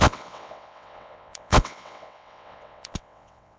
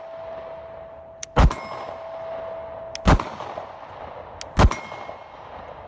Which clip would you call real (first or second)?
second